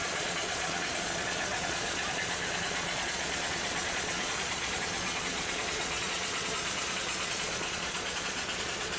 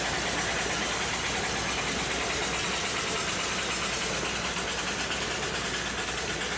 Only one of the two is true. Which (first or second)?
second